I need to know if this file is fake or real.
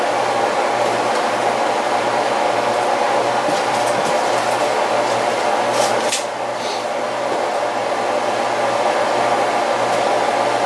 real